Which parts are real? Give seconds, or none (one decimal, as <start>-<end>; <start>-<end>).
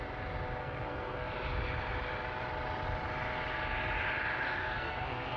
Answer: 0.0-0.6; 1.3-4.6